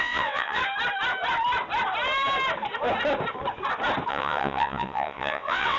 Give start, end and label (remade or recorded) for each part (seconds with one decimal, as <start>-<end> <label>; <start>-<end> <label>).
0.0-0.6 remade; 0.6-4.1 recorded; 4.1-5.8 remade